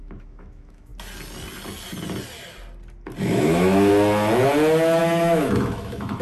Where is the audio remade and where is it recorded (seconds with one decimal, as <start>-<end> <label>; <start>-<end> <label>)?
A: 0.0-0.9 remade; 0.9-3.2 recorded; 3.2-3.9 remade; 3.9-5.0 recorded; 5.0-6.2 remade